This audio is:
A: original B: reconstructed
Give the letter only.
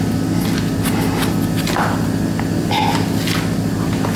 A